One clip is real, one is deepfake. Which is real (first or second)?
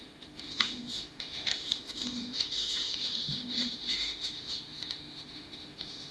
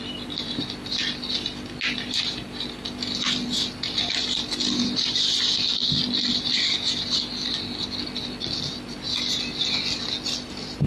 second